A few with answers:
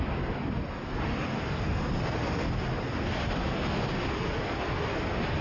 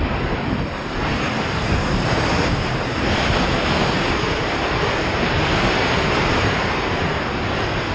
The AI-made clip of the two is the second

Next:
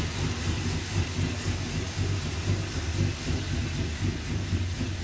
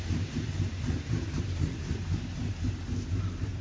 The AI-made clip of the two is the second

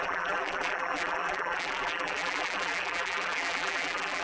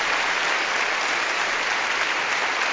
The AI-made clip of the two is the first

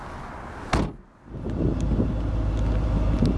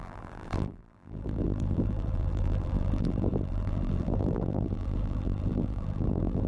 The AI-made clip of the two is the second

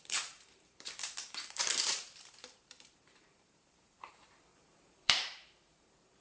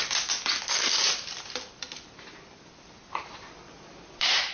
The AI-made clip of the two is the first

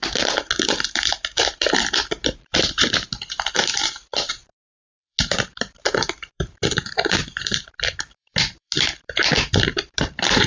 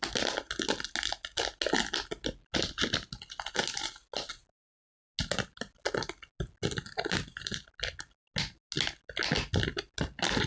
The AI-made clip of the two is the first